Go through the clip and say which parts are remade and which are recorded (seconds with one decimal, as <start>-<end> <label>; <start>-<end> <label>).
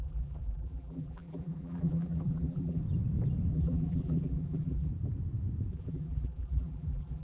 0.0-2.8 remade; 2.8-3.5 recorded; 3.5-4.9 remade; 4.9-5.7 recorded; 5.7-7.2 remade